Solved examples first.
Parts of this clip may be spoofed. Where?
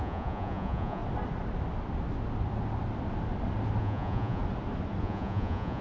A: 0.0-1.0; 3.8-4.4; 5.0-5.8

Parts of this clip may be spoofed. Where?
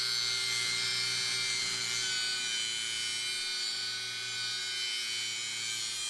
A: none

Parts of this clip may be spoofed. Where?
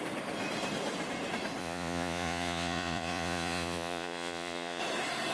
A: 1.6-4.8